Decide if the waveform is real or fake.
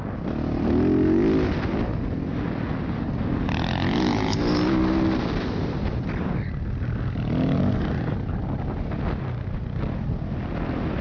real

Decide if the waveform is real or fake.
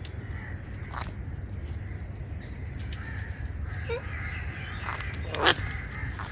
real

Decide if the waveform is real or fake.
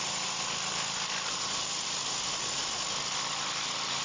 real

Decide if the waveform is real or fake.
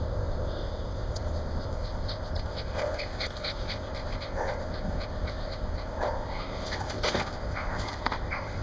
fake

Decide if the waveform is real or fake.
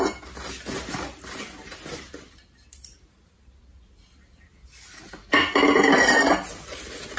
real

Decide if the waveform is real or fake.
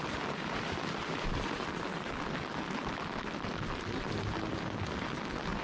real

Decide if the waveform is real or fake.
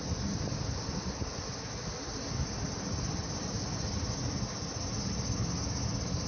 real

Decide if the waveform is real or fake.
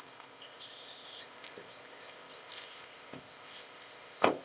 fake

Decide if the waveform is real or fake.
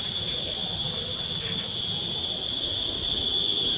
real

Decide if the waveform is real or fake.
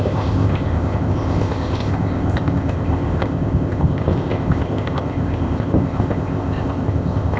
fake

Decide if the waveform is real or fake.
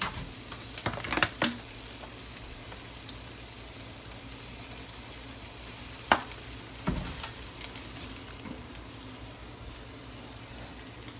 real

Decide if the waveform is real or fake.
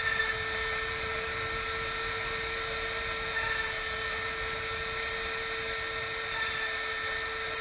real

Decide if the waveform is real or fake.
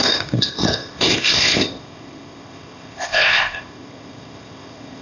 fake